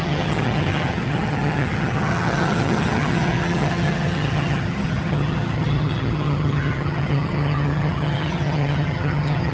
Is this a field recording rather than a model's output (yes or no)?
no